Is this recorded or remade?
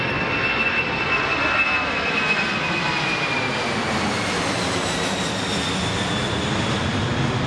remade